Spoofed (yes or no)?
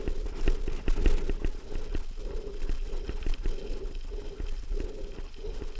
no